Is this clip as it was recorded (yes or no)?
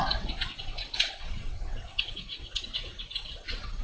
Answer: no